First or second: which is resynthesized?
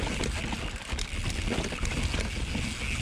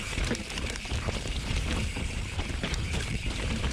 second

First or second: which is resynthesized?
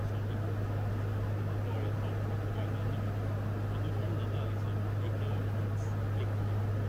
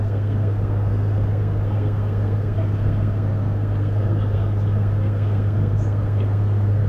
second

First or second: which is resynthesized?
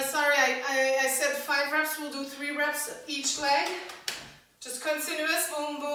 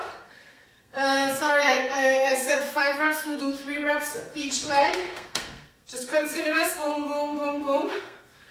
second